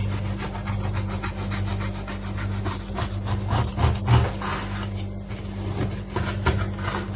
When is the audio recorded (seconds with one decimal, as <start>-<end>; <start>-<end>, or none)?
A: 0.0-7.2

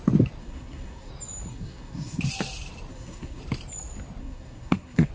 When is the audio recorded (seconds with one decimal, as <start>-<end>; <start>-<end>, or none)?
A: 0.0-0.4; 1.1-1.5; 2.2-2.9; 3.4-4.2

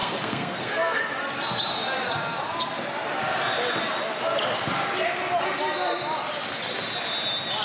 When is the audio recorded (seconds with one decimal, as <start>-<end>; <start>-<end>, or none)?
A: 1.0-7.6